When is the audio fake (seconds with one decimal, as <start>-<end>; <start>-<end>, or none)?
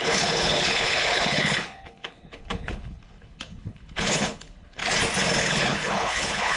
0.0-4.8; 5.4-6.6